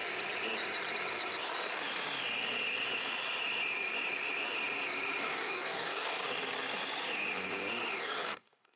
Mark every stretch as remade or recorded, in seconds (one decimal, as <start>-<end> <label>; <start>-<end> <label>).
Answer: 0.0-5.2 recorded; 5.2-6.2 remade; 6.2-8.0 recorded; 8.0-8.8 remade